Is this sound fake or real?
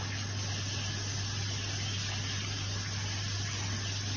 real